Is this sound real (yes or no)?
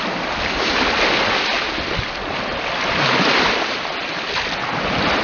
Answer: yes